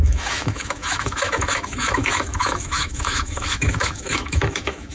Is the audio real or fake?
fake